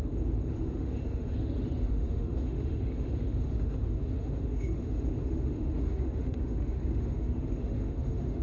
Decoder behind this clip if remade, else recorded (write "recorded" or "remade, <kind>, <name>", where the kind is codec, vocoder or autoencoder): remade, autoencoder, DAC-VAE